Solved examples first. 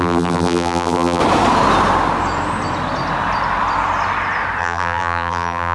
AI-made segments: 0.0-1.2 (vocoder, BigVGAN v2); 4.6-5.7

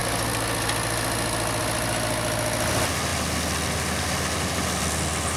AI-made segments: none

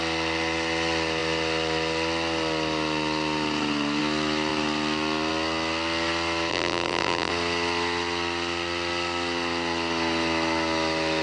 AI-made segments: 6.5-7.3 (vocoder, BigVGAN v2)

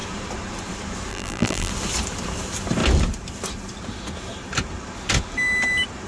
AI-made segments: 1.1-1.7 (vocoder, BigVGAN v2)